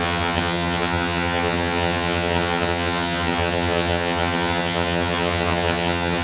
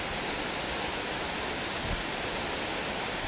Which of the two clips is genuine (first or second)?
second